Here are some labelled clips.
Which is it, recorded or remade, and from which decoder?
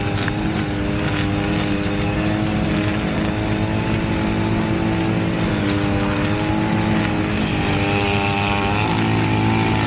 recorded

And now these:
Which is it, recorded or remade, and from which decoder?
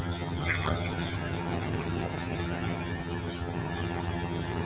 remade, vocoder, HiFi-GAN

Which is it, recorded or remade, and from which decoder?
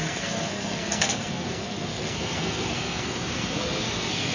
remade, codec, SNAC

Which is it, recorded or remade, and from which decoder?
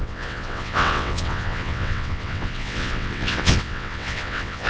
remade, vocoder, WaveNeXt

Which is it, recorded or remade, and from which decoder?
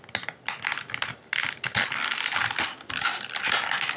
recorded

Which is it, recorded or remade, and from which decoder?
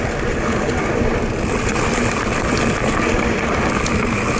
recorded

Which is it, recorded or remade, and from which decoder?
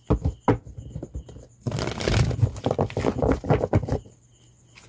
recorded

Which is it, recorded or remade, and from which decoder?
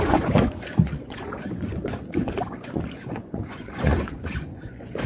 remade, vocoder, Vocos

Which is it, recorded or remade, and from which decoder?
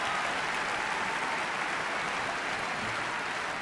recorded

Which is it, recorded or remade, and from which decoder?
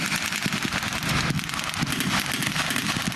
recorded